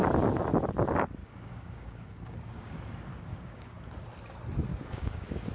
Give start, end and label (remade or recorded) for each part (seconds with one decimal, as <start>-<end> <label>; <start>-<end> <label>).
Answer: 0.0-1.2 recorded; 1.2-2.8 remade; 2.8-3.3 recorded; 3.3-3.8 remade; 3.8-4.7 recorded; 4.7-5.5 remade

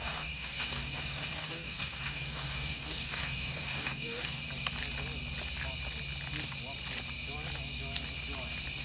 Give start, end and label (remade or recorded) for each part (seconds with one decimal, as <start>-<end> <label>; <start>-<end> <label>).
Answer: 0.0-4.4 remade; 4.4-8.8 recorded

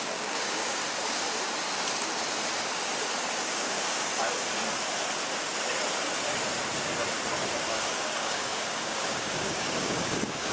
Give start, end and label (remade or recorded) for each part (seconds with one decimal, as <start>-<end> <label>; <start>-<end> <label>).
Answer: 0.0-0.8 remade; 0.8-3.4 recorded; 3.4-4.1 remade; 4.1-7.7 recorded; 7.7-10.5 remade

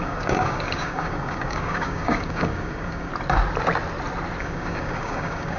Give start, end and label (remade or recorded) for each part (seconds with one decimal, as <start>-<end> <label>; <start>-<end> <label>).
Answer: 0.0-3.1 remade; 3.1-4.4 recorded; 4.4-5.6 remade